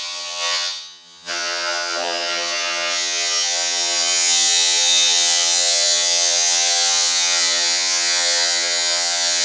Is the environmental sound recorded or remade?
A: remade